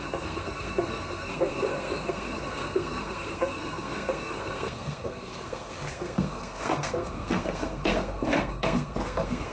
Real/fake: fake